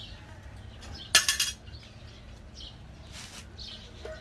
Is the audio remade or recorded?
recorded